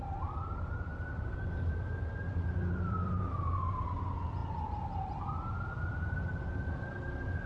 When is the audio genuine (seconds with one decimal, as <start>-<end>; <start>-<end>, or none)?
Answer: 0.0-0.9; 3.5-7.5